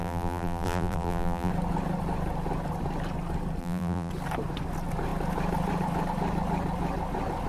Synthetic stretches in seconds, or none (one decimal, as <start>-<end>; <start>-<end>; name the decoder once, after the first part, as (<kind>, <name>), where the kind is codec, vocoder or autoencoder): 0.0-1.5 (vocoder, BigVGAN v2); 3.6-4.1